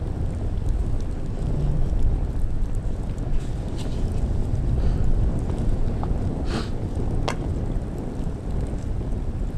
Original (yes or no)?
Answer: yes